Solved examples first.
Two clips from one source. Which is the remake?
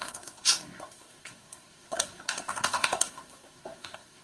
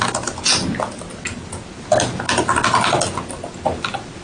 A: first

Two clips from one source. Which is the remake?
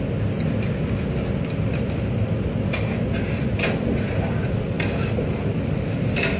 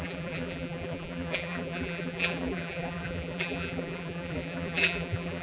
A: second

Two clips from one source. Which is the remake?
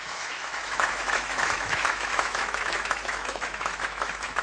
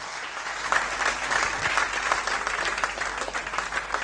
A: first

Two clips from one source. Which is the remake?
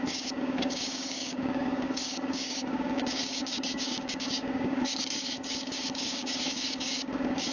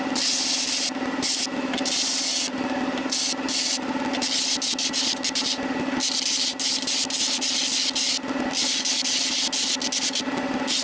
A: first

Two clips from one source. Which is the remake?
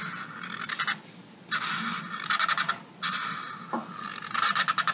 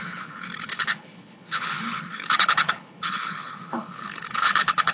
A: second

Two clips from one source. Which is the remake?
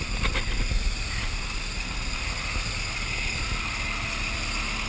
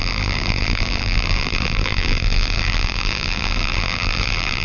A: second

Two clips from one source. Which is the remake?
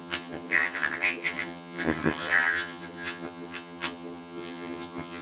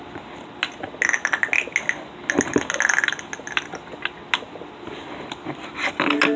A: first